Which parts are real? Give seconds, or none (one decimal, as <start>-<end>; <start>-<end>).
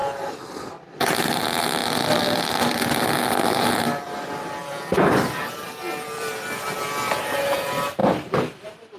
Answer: 0.0-0.6; 8.0-8.6